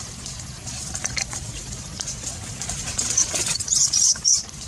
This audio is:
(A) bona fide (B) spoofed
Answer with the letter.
B